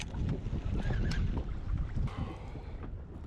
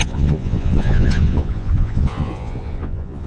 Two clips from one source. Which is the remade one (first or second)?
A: second